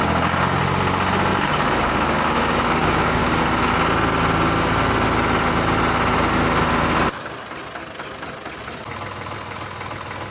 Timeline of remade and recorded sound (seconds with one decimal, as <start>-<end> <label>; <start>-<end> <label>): 0.0-0.6 remade; 0.6-1.3 recorded; 1.3-3.4 remade; 3.4-10.3 recorded